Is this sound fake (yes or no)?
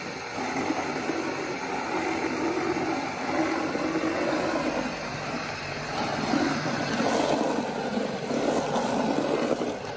no